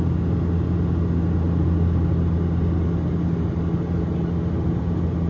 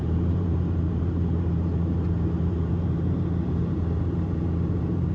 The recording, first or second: first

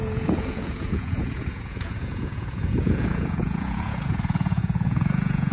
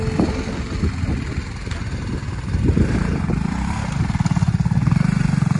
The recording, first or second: second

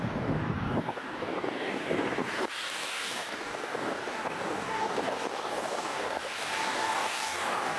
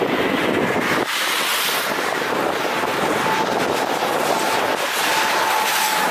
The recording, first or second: second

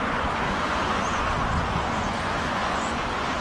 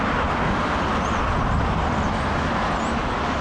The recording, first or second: second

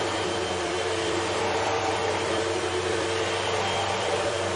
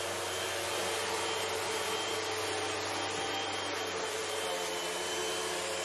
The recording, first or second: second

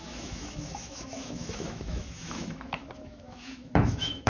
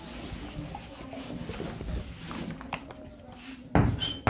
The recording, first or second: second